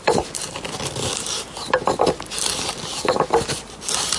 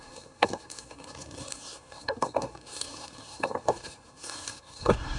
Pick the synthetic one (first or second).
second